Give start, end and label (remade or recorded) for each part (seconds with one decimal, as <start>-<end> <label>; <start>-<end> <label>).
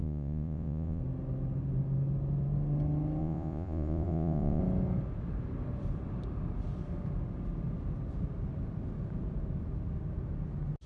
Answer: 0.0-1.0 remade; 1.0-3.2 recorded; 3.2-4.6 remade; 4.6-10.9 recorded